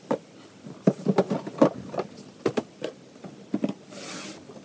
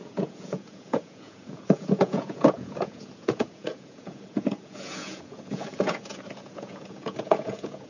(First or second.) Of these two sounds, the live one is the first